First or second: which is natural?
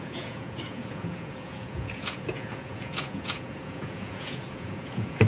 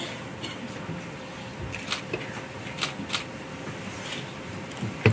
second